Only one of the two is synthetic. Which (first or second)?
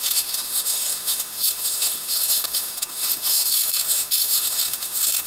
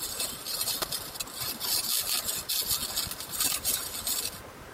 first